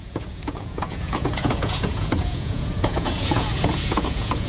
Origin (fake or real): fake